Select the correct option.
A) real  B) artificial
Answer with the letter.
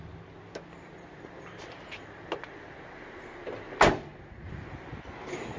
A